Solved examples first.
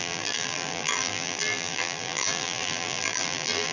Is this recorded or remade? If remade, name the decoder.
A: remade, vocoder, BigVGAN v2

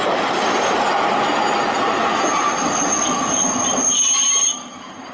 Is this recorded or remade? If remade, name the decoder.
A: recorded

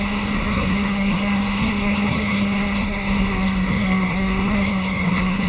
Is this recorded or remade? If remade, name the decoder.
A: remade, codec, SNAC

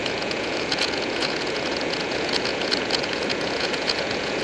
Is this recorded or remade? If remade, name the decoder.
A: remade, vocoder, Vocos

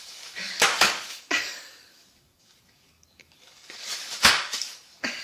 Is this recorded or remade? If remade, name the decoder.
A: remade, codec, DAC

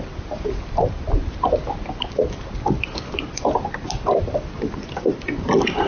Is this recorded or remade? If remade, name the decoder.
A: recorded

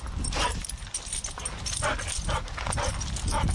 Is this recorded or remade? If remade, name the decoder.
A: recorded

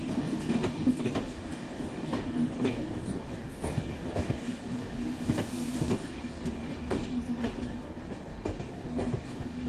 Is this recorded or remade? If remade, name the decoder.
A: remade, codec, DAC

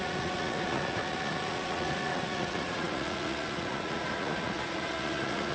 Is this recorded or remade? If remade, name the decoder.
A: remade, vocoder, Vocos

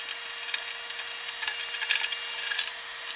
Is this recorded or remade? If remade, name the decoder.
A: recorded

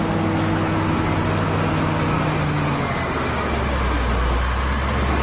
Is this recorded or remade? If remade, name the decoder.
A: recorded